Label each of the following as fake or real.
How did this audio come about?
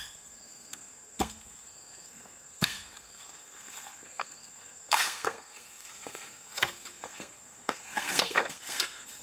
fake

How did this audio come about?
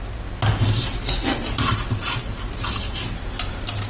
real